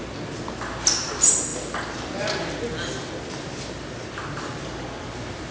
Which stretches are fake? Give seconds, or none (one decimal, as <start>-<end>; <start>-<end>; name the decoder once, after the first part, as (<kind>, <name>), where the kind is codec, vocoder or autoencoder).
none